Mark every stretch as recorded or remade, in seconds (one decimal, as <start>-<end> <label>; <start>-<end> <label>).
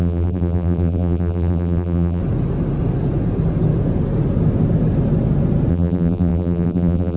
0.0-2.2 remade; 2.2-5.7 recorded; 5.7-7.2 remade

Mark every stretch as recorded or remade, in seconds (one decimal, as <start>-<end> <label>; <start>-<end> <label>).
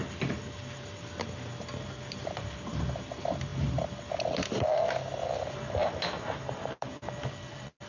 0.0-5.8 recorded; 5.8-7.0 remade; 7.0-7.9 recorded